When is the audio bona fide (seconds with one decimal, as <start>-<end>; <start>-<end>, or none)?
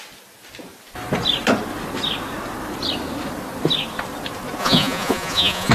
0.0-4.6